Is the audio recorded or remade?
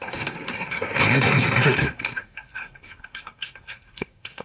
remade